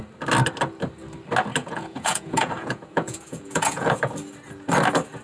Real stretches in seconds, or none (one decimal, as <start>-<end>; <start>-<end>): 0.0-1.6; 4.0-5.2